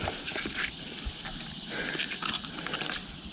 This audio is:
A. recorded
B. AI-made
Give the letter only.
A